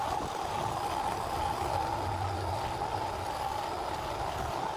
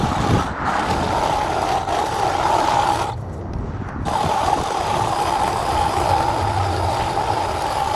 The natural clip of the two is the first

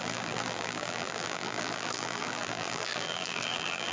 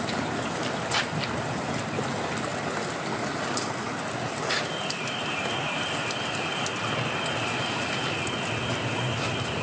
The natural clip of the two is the second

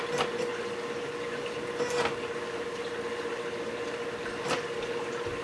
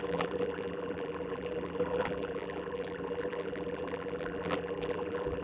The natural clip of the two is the first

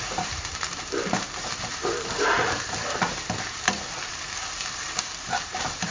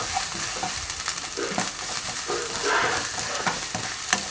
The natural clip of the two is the second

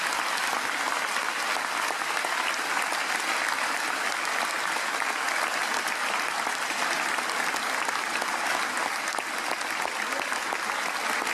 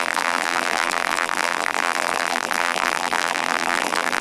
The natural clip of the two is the first